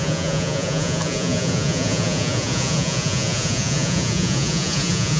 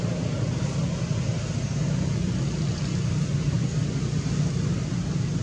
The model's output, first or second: first